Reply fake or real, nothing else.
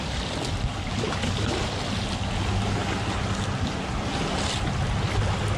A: real